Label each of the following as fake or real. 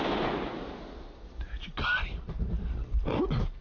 real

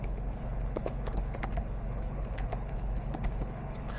fake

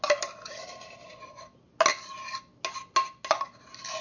real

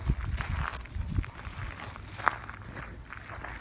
real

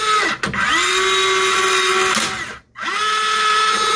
real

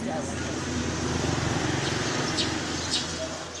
real